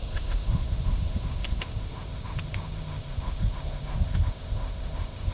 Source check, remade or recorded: remade